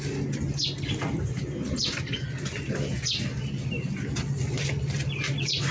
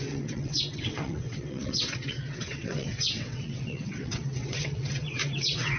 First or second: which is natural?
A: first